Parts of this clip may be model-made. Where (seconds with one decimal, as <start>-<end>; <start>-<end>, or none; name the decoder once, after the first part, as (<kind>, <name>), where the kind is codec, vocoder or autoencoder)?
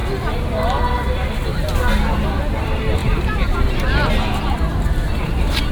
2.1-5.7 (vocoder, BigVGAN v2)